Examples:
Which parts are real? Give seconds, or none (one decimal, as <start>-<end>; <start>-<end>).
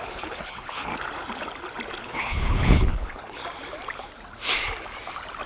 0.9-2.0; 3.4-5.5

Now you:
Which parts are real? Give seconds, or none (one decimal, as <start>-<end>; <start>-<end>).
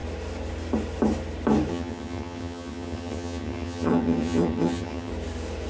0.0-1.7; 5.1-5.7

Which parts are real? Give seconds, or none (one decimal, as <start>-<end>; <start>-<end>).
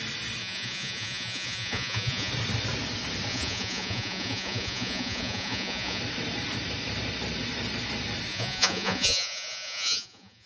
0.0-0.4; 2.3-3.3; 6.0-8.3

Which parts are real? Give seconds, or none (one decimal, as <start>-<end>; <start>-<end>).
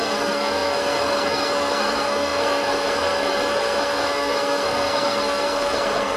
none